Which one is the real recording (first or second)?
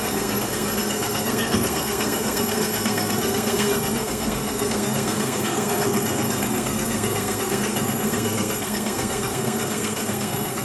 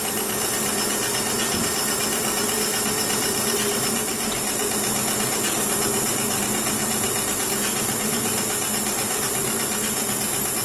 second